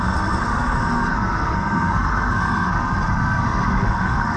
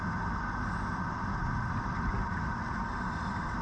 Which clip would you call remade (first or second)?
first